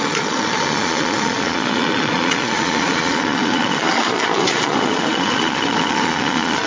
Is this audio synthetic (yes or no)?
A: yes